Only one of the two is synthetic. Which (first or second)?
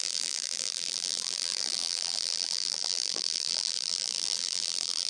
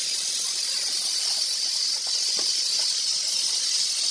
first